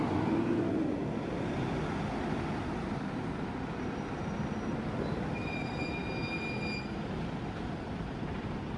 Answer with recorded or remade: remade